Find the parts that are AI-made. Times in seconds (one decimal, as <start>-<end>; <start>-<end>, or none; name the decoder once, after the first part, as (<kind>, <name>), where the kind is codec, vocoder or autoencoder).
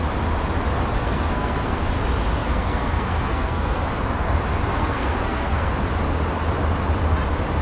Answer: 1.0-1.9 (codec, SNAC); 2.4-3.9; 4.7-5.7